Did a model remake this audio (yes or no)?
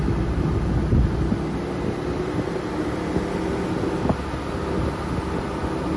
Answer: no